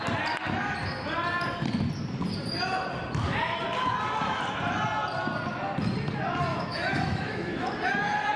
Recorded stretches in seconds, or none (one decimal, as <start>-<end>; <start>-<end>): 0.0-6.5; 7.7-8.4